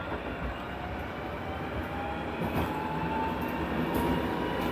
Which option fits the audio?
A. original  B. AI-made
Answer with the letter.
B